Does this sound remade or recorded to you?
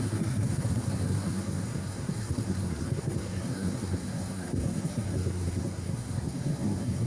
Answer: remade